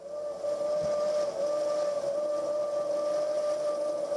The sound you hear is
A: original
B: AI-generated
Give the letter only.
A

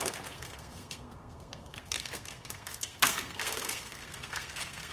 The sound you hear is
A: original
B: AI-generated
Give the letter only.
B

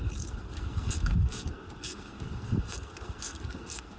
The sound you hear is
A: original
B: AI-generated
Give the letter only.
B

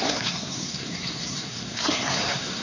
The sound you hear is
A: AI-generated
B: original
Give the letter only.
A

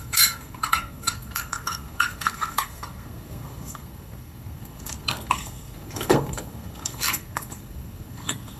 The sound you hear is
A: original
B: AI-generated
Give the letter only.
B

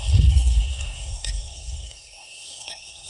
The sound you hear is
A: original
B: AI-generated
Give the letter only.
B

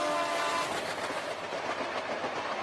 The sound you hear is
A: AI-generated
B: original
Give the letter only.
B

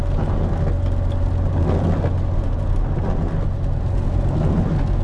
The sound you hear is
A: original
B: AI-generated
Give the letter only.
A